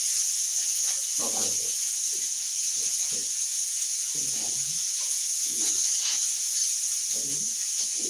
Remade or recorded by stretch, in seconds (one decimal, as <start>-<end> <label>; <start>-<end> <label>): 0.0-6.6 remade; 6.6-7.1 recorded; 7.1-8.1 remade